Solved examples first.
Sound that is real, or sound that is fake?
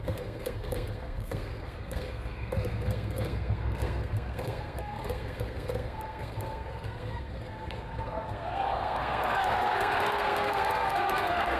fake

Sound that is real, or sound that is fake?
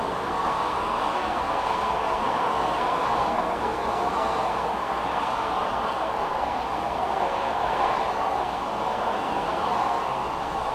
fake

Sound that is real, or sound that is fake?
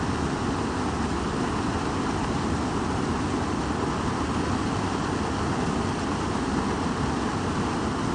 real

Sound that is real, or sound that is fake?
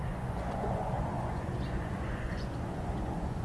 fake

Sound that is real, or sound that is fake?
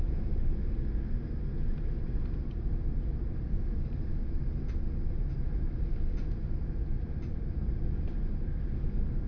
real